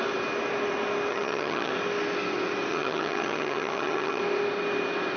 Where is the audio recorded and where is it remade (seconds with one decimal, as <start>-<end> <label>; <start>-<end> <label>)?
0.0-1.1 recorded; 1.1-1.7 remade; 1.7-2.7 recorded; 2.7-4.2 remade; 4.2-5.2 recorded